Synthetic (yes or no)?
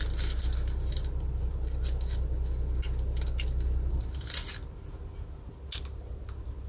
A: no